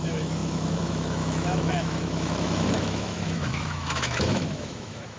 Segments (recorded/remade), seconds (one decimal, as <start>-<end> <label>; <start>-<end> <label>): 0.0-5.2 remade